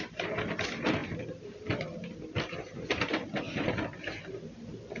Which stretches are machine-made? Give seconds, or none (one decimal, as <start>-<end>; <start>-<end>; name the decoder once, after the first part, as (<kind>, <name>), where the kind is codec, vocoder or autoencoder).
none